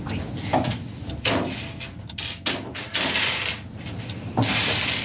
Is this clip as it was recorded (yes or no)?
yes